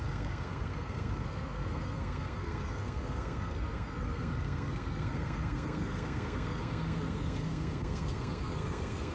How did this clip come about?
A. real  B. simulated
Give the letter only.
B